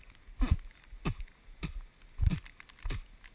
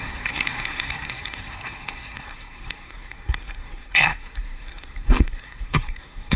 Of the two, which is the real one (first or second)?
first